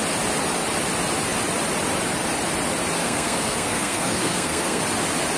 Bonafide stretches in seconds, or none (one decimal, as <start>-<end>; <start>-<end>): 0.0-3.0; 4.8-5.4